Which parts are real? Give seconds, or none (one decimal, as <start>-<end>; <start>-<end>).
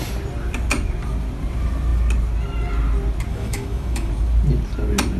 0.0-3.3; 4.1-5.2